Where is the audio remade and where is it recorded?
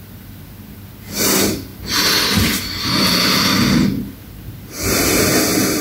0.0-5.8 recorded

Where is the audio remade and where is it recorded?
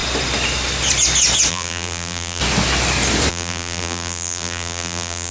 0.0-1.5 recorded; 1.5-2.4 remade; 2.4-3.3 recorded; 3.3-5.3 remade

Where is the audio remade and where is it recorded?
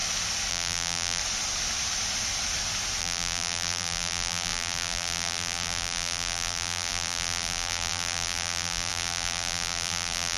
0.0-0.5 recorded; 0.5-1.2 remade; 1.2-3.0 recorded; 3.0-10.4 remade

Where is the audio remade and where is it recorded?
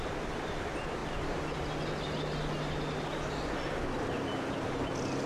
0.0-1.0 recorded; 1.0-1.6 remade; 1.6-5.3 recorded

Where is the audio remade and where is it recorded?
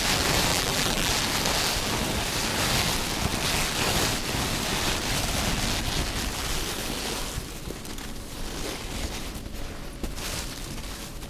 0.0-0.5 recorded; 0.5-1.1 remade; 1.1-11.3 recorded